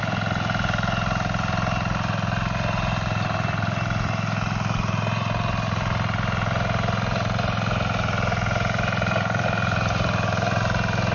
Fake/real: real